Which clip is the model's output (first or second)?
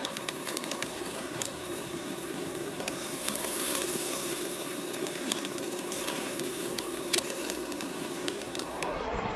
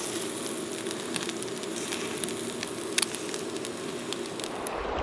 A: first